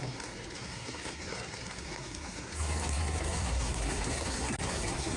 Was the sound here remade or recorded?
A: remade